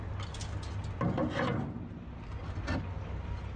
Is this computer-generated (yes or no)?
no